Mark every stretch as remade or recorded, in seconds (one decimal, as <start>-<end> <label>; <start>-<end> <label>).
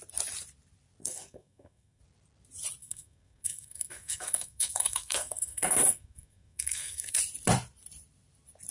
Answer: 0.0-1.0 recorded; 1.0-2.0 remade; 2.0-2.8 recorded; 2.8-7.2 remade; 7.2-8.7 recorded